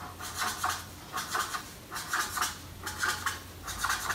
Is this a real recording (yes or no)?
yes